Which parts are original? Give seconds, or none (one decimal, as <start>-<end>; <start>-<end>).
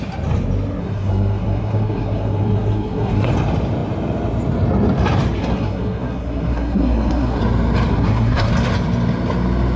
0.0-0.8; 3.3-5.4; 7.4-7.9; 8.5-9.8